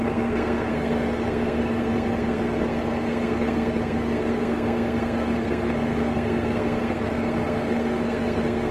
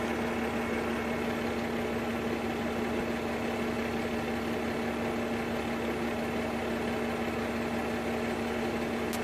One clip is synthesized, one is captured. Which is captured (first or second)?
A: second